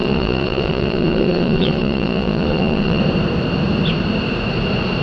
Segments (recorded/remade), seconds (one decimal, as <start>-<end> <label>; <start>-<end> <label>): 0.0-3.0 remade; 3.0-5.0 recorded